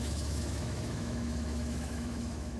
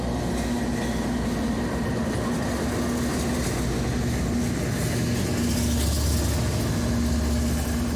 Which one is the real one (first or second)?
second